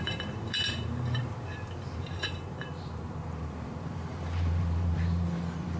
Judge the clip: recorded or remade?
remade